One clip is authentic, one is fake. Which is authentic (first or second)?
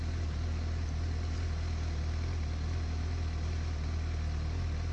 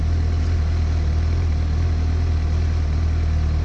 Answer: first